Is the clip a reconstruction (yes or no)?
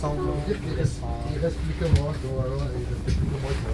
no